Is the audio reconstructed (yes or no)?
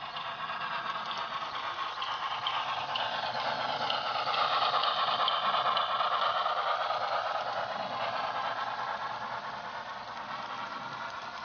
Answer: no